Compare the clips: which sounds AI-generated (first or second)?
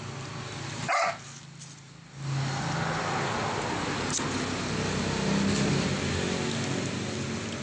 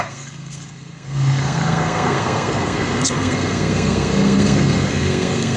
second